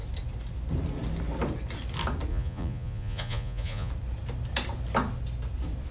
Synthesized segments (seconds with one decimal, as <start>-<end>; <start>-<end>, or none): 2.3-3.9